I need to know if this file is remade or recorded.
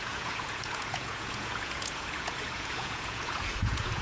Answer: remade